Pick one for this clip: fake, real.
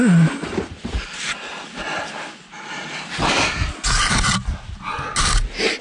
real